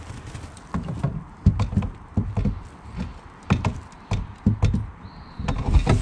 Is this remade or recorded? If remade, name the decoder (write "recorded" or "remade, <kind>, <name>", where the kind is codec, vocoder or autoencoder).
recorded